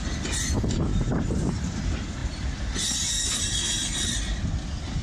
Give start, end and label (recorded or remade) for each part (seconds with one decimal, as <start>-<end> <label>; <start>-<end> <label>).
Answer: 0.0-0.9 recorded; 0.9-1.8 remade; 1.8-5.0 recorded

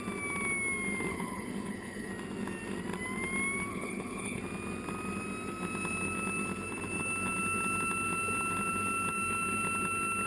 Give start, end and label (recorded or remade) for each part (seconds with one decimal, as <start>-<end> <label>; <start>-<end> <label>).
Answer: 0.0-1.1 recorded; 1.1-2.1 remade; 2.1-3.7 recorded; 3.7-4.4 remade; 4.4-10.3 recorded